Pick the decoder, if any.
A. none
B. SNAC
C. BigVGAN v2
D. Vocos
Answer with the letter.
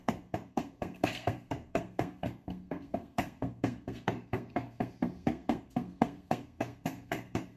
B